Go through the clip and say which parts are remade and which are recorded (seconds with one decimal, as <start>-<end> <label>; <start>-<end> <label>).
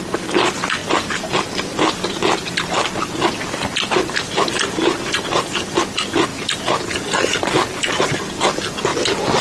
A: 0.0-9.4 recorded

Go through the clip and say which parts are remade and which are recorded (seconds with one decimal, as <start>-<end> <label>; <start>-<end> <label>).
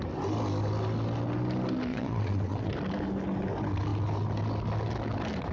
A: 0.0-1.9 recorded; 1.9-2.7 remade; 2.7-5.5 recorded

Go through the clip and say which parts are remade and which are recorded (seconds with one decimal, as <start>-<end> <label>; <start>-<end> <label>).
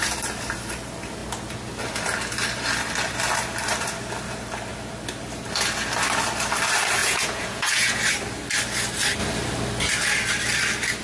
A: 0.0-7.0 recorded; 7.0-8.0 remade; 8.0-11.0 recorded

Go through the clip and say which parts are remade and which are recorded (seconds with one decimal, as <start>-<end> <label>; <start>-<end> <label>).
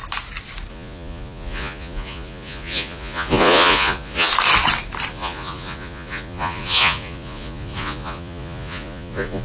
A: 0.0-0.7 recorded; 0.7-4.3 remade; 4.3-5.1 recorded; 5.1-9.4 remade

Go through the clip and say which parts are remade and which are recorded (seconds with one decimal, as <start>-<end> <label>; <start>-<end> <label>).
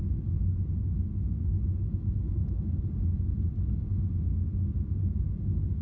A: 0.0-1.1 recorded; 1.1-1.6 remade; 1.6-5.8 recorded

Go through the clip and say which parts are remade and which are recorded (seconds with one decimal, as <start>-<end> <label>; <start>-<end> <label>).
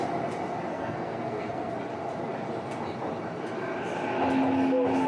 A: 0.0-0.7 recorded; 0.7-1.7 remade; 1.7-5.1 recorded